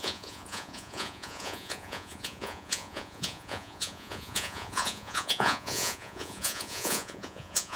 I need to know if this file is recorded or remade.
remade